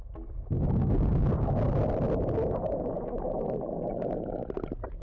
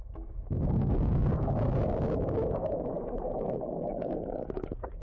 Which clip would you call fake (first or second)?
second